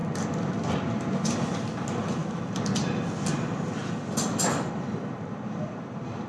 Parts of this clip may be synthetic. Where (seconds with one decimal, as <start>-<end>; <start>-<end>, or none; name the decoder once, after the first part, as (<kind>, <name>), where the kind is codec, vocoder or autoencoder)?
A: none